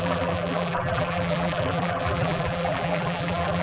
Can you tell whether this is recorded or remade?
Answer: remade